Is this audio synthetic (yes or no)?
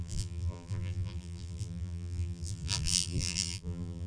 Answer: yes